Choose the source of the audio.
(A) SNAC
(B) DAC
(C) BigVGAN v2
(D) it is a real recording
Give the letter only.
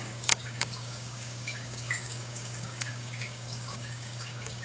B